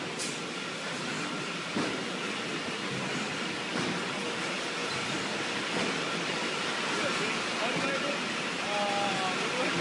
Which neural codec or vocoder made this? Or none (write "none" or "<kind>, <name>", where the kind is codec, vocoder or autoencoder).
none